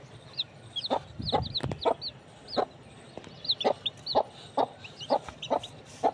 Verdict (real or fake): real